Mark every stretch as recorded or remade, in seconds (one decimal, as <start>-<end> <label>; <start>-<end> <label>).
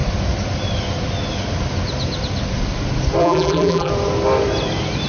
0.0-3.2 recorded; 3.2-3.9 remade; 3.9-5.1 recorded